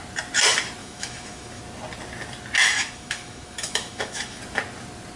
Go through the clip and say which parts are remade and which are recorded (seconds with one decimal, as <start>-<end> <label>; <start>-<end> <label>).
0.0-0.8 recorded; 0.8-1.6 remade; 1.6-2.6 recorded; 2.6-4.4 remade; 4.4-5.2 recorded